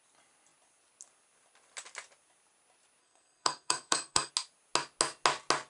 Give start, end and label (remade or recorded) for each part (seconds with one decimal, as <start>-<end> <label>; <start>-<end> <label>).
0.0-3.0 recorded; 3.0-4.3 remade; 4.3-5.7 recorded